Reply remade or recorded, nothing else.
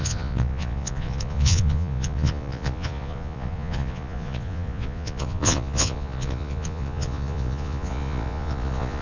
remade